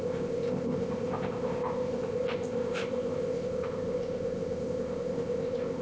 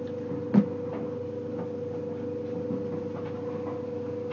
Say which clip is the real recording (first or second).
second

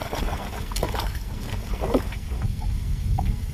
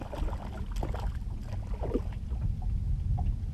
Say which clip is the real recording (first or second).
second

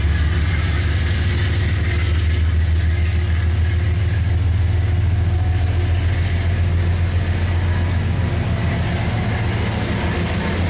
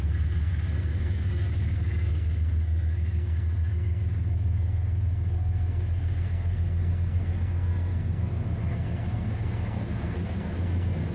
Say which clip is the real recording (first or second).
first